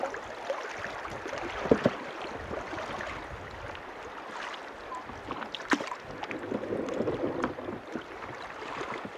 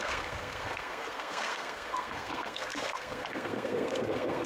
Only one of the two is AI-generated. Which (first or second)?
second